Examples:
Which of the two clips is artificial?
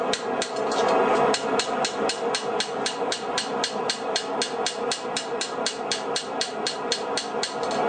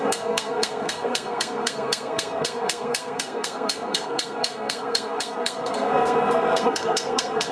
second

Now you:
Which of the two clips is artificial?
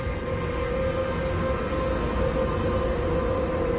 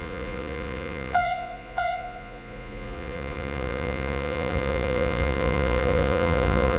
second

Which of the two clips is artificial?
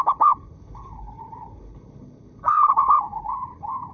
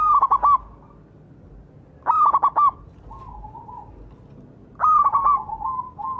first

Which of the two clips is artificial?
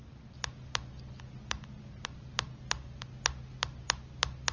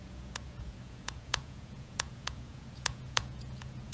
second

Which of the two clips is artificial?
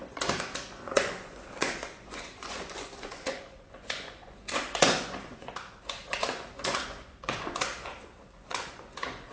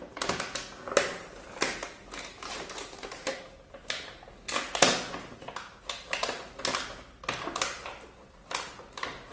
first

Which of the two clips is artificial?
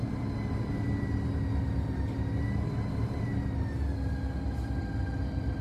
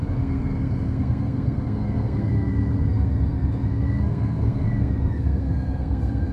second